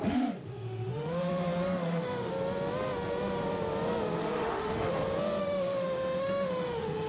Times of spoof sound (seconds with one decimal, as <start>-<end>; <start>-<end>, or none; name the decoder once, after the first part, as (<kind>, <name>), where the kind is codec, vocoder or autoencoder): 0.0-2.3 (autoencoder, DAC-VAE); 4.2-4.9; 5.4-7.1